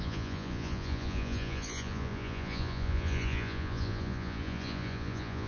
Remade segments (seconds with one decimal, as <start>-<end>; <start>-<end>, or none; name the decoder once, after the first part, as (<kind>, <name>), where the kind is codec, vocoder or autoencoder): 0.0-5.5 (vocoder, Vocos)